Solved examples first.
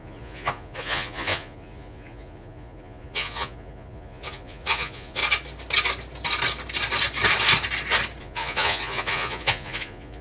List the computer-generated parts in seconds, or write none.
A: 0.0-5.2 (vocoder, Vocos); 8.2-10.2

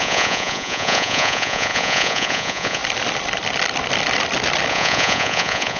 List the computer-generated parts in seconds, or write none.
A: 0.0-2.8 (vocoder, Vocos); 4.7-5.8

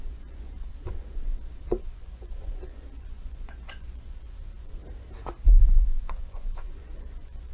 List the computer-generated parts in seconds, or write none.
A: 0.0-4.8 (vocoder, Vocos); 5.7-7.5

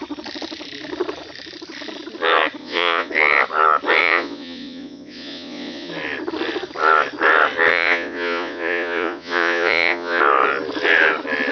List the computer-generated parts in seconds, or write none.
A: 2.6-3.1 (vocoder, Vocos); 4.0-5.9; 7.7-10.2

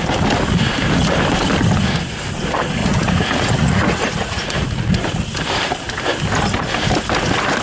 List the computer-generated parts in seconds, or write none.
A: 2.8-4.9 (vocoder, Vocos)